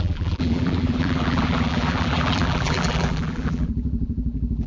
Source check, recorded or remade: remade